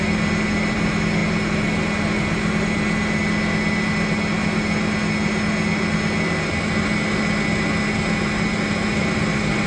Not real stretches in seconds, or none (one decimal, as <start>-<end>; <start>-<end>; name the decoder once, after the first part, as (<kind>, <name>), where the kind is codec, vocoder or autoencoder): none

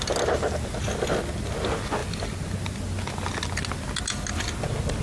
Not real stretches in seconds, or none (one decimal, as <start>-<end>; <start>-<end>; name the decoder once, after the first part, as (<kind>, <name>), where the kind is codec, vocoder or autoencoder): none

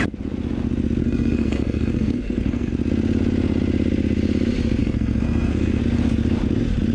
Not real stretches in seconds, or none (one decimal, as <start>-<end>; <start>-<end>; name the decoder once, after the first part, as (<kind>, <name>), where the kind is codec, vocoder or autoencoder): 1.0-2.7 (codec, SNAC); 4.8-5.8

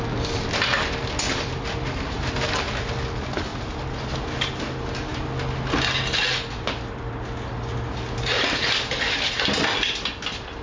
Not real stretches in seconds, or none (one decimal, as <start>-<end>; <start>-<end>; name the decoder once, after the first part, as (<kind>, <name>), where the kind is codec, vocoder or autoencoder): none

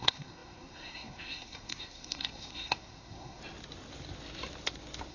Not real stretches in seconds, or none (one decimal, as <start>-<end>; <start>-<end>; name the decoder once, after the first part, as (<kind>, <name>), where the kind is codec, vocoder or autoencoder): 0.0-3.4 (codec, SNAC)

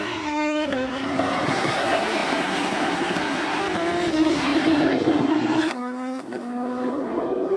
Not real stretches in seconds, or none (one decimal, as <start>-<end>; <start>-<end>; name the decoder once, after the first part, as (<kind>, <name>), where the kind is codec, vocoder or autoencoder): 0.0-3.6 (codec, SNAC); 4.1-7.6